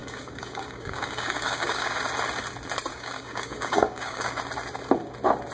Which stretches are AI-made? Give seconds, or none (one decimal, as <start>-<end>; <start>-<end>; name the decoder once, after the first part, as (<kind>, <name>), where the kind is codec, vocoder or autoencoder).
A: 0.0-2.0 (codec, DAC); 2.9-4.4